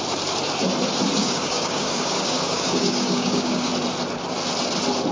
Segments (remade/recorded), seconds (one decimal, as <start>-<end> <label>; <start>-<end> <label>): 0.0-1.2 recorded; 1.2-3.7 remade; 3.7-5.1 recorded